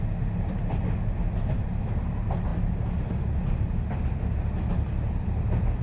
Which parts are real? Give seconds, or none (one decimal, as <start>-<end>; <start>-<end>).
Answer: 0.0-2.5; 3.1-5.8